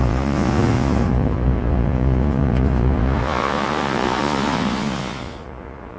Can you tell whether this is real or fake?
fake